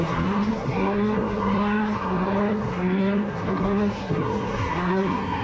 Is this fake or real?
fake